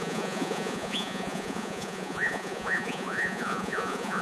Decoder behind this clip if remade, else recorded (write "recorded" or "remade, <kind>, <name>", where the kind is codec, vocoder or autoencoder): remade, vocoder, Vocos